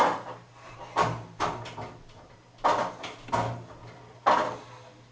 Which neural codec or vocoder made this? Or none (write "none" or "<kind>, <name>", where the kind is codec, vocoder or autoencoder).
none